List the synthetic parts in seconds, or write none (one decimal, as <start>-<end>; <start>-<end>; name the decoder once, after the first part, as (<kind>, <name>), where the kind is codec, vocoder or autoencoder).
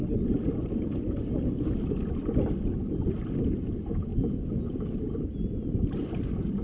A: none